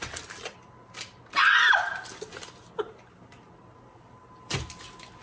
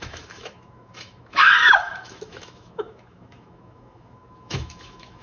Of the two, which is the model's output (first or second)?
second